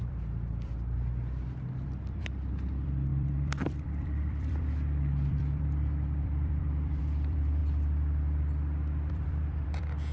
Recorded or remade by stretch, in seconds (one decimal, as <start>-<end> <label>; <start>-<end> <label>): 0.0-7.6 remade; 7.6-9.1 recorded; 9.1-10.1 remade